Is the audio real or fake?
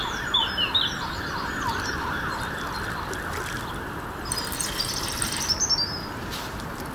real